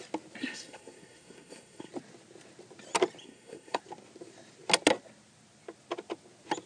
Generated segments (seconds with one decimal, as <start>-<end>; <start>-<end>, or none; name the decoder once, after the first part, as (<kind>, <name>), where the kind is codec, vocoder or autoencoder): 0.4-1.9 (codec, SNAC); 3.2-3.8